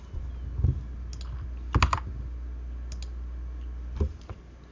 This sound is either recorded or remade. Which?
recorded